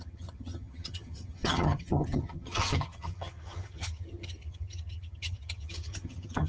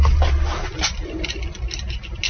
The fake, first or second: first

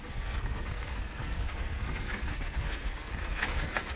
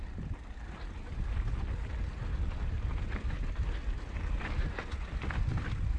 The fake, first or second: first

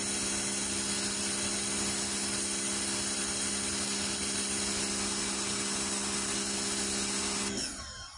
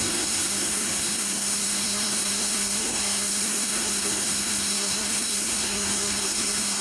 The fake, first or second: second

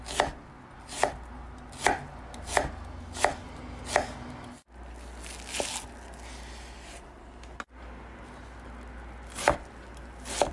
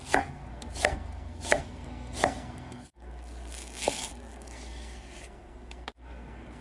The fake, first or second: second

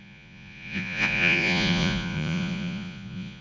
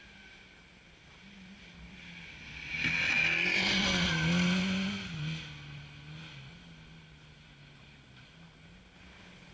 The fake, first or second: first